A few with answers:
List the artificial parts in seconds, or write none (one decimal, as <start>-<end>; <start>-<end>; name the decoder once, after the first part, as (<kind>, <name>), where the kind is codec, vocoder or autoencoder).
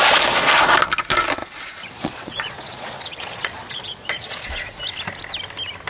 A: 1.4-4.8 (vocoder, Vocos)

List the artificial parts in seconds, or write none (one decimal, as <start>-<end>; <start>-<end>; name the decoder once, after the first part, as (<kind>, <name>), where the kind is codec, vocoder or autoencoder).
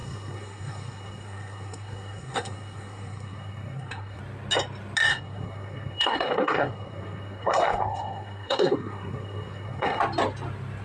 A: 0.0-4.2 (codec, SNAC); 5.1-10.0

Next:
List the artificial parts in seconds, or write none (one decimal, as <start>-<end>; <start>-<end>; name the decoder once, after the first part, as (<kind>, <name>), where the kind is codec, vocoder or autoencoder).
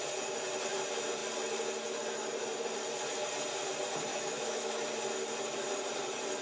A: 4.1-4.9 (autoencoder, DAC-VAE)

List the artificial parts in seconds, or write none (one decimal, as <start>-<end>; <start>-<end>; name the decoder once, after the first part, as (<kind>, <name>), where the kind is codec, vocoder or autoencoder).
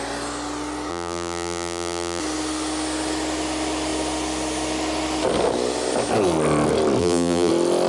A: 0.9-2.2 (vocoder, BigVGAN v2); 7.0-7.5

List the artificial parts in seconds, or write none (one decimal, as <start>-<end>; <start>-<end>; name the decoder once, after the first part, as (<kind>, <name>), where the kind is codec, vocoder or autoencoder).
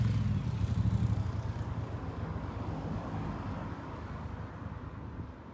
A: 1.0-4.3 (codec, DAC)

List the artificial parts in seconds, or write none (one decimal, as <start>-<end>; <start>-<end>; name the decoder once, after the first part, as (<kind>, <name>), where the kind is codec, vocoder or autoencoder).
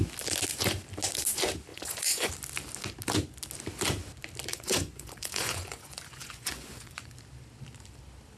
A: 1.7-2.3 (vocoder, Vocos); 4.5-7.1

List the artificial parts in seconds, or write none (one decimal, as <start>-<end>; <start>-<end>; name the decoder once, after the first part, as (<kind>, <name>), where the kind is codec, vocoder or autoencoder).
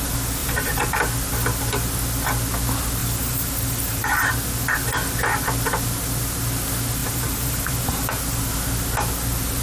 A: 0.4-0.9 (vocoder, BigVGAN v2); 3.0-4.3; 7.0-8.1